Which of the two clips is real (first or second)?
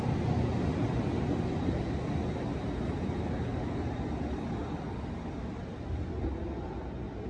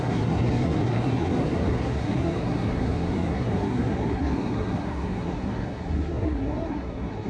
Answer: first